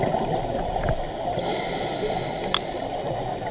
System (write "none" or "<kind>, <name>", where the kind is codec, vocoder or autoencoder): none